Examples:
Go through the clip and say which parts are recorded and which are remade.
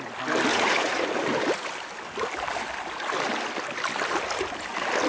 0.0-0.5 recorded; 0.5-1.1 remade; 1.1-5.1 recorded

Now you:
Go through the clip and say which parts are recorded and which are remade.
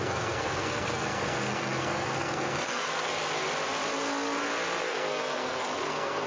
0.0-3.1 remade; 3.1-4.8 recorded; 4.8-6.3 remade